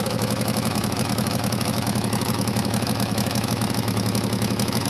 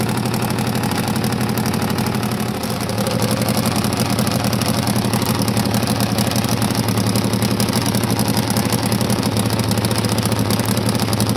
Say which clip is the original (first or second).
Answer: second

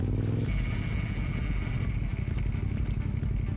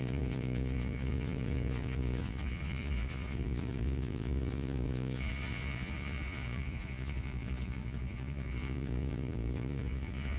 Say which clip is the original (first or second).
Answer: first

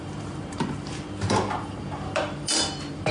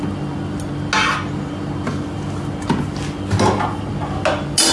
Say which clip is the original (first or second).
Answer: second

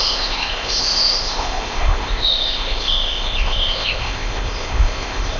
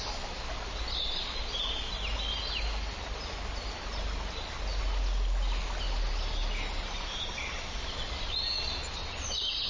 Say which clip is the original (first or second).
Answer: second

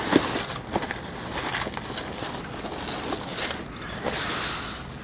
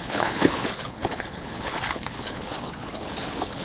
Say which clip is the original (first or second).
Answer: first